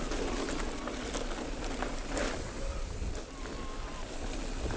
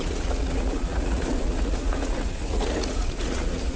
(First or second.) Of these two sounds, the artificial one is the second